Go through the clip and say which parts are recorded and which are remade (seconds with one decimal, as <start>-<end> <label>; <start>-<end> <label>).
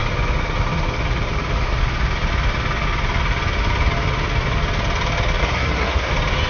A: 0.0-5.4 recorded; 5.4-6.1 remade; 6.1-6.5 recorded